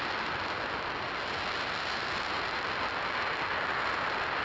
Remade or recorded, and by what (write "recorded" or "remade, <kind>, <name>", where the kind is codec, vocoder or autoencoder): recorded